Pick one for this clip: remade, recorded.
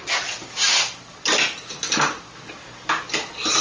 recorded